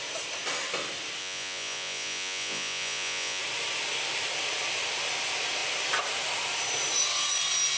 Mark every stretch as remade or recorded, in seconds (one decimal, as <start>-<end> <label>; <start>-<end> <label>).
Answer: 0.0-1.2 recorded; 1.2-3.4 remade; 3.4-7.8 recorded